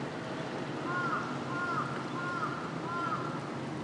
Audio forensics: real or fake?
real